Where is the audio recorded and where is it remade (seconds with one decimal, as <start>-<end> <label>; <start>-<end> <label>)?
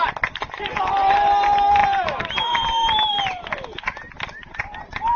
0.0-1.8 recorded; 1.8-3.2 remade; 3.2-5.2 recorded